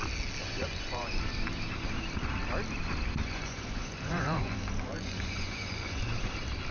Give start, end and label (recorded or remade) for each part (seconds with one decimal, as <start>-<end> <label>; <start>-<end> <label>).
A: 0.0-0.4 recorded; 0.4-1.2 remade; 1.2-3.2 recorded; 3.2-6.0 remade; 6.0-6.7 recorded